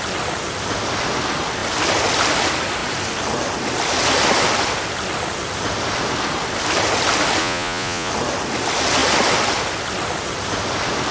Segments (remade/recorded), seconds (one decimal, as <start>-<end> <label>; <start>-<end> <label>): 0.0-7.4 recorded; 7.4-8.1 remade; 8.1-11.1 recorded